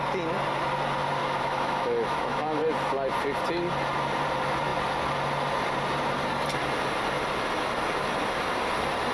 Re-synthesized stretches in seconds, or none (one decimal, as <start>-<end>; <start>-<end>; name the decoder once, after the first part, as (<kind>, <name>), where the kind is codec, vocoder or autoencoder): 1.2-2.6 (autoencoder, DAC-VAE)

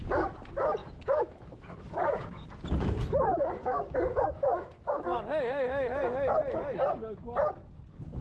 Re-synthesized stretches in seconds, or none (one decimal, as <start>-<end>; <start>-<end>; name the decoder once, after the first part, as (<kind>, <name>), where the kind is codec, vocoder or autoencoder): 0.8-2.5 (autoencoder, DAC-VAE); 3.3-5.3

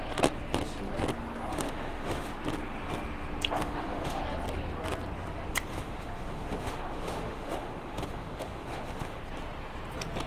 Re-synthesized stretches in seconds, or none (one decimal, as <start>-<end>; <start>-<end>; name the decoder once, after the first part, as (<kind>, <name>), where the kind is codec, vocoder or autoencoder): 1.5-2.3 (autoencoder, DAC-VAE); 3.6-4.2; 5.7-9.2

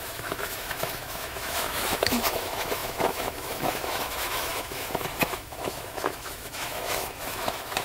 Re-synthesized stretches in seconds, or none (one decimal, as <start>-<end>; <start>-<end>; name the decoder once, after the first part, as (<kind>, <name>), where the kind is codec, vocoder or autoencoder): 0.0-7.8 (autoencoder, DAC-VAE)

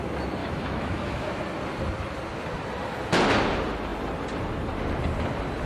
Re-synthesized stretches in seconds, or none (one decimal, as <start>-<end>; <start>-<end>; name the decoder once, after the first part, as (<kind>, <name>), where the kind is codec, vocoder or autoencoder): 0.4-1.3 (autoencoder, DAC-VAE)

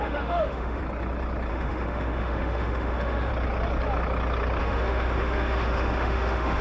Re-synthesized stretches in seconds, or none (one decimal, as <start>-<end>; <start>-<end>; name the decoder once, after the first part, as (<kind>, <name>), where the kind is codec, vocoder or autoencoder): 0.0-0.8 (autoencoder, DAC-VAE); 1.5-3.3; 4.6-6.6